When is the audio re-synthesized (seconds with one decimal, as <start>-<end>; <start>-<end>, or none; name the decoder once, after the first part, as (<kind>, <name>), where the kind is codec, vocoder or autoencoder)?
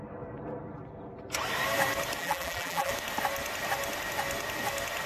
2.2-2.9 (vocoder, BigVGAN v2)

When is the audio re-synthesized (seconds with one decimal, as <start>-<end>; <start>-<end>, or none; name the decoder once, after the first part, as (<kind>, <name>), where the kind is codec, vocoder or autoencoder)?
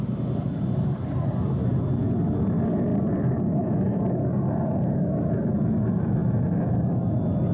2.9-4.1 (vocoder, BigVGAN v2); 6.2-7.0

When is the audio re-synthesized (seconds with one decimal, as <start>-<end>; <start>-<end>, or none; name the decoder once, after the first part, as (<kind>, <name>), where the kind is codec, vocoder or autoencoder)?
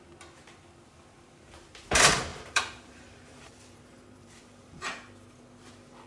2.3-5.1 (vocoder, BigVGAN v2)